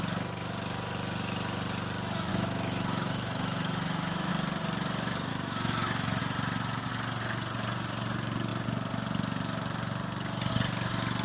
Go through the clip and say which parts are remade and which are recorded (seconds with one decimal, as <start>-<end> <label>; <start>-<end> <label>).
0.0-2.3 recorded; 2.3-4.3 remade; 4.3-5.3 recorded; 5.3-6.2 remade; 6.2-11.2 recorded